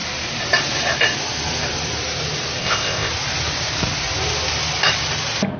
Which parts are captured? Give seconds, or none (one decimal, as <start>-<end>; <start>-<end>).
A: 0.0-2.6; 3.1-5.6